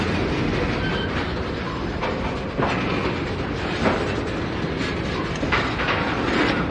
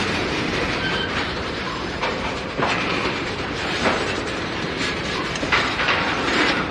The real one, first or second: first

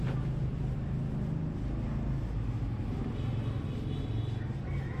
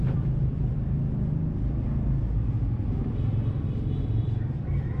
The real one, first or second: first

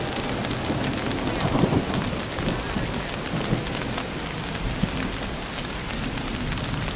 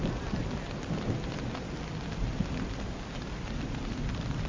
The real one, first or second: first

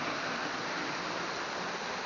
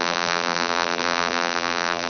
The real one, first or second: first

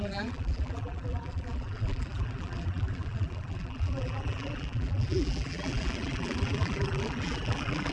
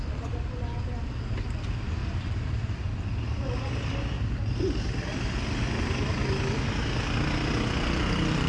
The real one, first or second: second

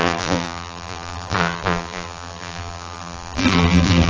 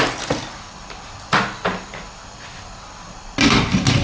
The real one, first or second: second